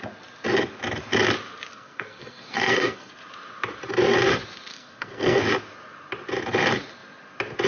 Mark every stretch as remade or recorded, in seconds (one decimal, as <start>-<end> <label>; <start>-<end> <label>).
0.0-1.7 recorded; 1.7-3.1 remade; 3.1-4.7 recorded; 4.7-5.4 remade; 5.4-7.7 recorded